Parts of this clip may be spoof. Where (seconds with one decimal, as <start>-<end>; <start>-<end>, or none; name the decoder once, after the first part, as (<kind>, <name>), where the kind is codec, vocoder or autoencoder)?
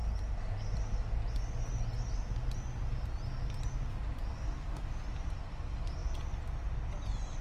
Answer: 4.3-4.8 (codec, SNAC)